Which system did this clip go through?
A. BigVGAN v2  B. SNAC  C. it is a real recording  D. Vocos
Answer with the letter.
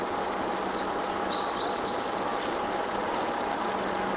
C